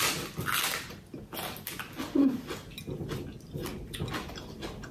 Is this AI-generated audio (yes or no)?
no